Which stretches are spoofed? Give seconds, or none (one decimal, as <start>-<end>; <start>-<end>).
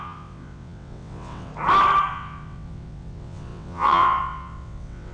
0.0-1.5; 2.1-5.1